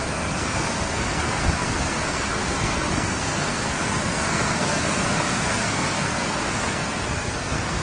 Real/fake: fake